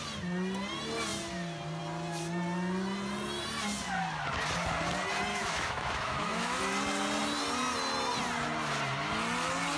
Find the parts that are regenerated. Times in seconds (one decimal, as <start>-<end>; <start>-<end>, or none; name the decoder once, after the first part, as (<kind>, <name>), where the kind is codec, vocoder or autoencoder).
5.3-6.6 (autoencoder, DAC-VAE)